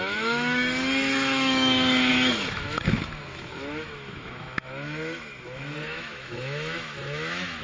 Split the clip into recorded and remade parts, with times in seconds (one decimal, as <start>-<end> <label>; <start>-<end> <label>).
0.0-7.6 remade

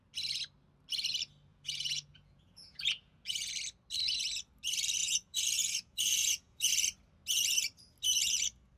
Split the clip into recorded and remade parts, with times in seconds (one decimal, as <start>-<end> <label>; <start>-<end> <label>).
0.0-1.5 recorded; 1.5-3.5 remade; 3.5-5.0 recorded; 5.0-6.7 remade; 6.7-8.8 recorded